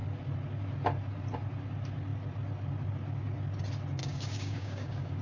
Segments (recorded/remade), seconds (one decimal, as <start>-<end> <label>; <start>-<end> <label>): 0.0-4.0 recorded; 4.0-5.2 remade